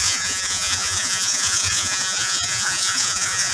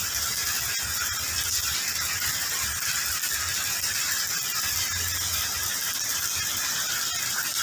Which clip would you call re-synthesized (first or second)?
first